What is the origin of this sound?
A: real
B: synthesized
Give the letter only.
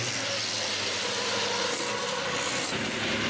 A